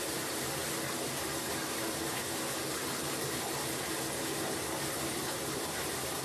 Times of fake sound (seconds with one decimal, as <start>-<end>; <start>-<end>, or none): 0.0-0.6; 1.4-2.8; 4.9-6.2